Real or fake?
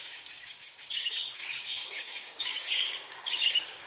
fake